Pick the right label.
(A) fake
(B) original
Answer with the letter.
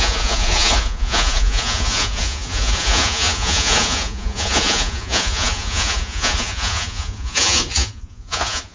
A